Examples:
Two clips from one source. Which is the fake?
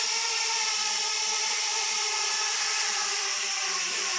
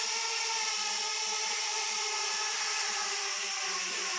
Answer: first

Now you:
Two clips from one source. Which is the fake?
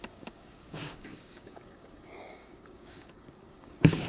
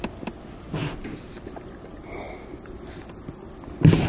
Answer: first